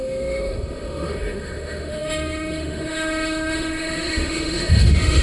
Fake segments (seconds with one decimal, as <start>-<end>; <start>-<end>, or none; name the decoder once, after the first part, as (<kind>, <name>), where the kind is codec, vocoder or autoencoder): 0.0-5.2 (autoencoder, DAC-VAE)

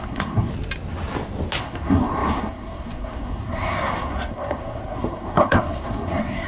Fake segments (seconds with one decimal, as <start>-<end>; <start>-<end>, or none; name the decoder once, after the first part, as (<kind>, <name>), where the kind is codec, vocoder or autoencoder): 0.0-0.5 (codec, SNAC); 1.6-6.5

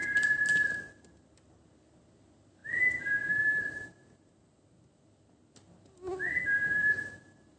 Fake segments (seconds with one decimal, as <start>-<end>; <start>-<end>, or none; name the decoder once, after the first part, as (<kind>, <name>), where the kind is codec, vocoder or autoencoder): none